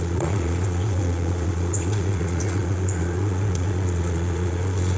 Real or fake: fake